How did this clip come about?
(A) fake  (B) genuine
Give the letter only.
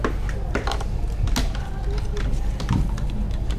B